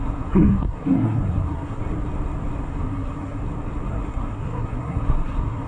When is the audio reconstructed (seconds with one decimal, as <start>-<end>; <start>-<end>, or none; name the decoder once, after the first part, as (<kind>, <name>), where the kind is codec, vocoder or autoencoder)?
0.0-1.8 (codec, SNAC); 2.6-3.4; 3.9-5.7